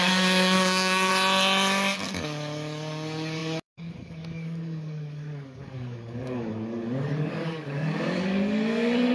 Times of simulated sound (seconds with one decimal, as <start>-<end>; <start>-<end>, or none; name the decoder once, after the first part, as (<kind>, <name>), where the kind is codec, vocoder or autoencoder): 0.0-1.1 (codec, DAC); 2.1-9.1